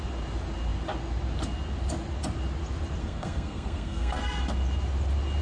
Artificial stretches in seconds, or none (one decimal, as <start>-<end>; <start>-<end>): 3.0-4.4